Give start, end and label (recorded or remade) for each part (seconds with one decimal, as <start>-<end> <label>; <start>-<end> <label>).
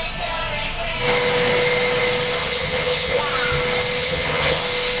0.0-2.4 recorded; 2.4-3.2 remade; 3.2-4.0 recorded; 4.0-4.6 remade; 4.6-5.0 recorded